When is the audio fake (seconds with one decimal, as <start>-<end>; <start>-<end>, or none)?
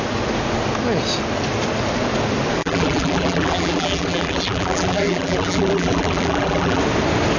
2.6-6.8